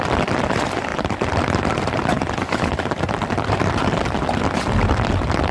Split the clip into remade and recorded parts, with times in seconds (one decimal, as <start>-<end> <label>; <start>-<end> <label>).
0.0-0.9 recorded; 0.9-4.2 remade; 4.2-5.5 recorded